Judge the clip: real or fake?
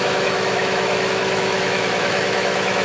fake